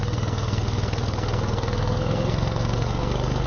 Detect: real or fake fake